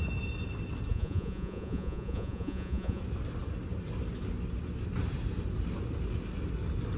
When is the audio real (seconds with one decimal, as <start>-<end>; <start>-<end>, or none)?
0.0-0.9; 3.0-7.0